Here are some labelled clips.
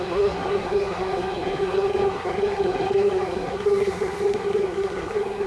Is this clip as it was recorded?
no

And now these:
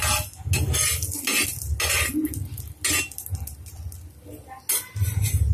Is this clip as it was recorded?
yes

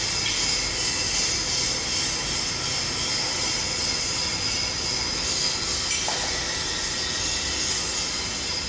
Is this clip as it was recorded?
yes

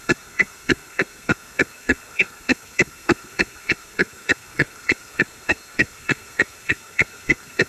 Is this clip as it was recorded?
no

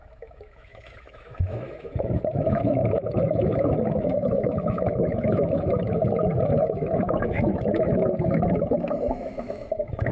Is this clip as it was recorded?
no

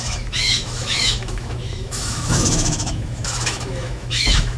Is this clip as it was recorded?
no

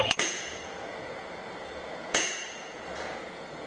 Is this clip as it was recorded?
no